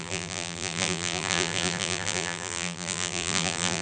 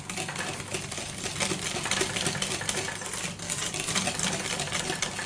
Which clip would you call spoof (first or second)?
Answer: first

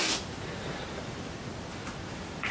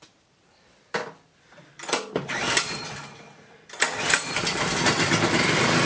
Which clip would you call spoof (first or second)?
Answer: second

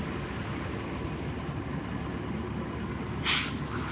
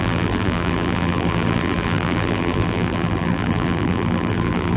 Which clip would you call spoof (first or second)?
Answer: second